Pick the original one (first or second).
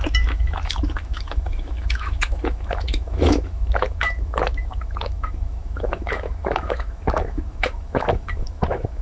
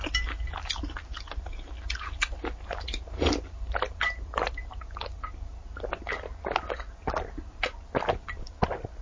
second